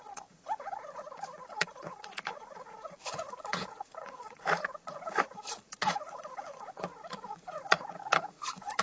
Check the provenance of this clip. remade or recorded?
remade